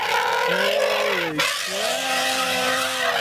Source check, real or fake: real